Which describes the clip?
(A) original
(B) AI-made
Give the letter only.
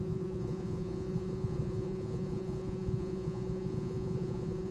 B